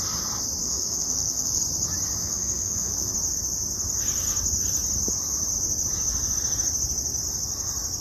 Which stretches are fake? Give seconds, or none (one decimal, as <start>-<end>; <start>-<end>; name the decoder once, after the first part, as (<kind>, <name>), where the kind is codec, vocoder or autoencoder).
0.6-1.6 (codec, SNAC); 2.2-3.1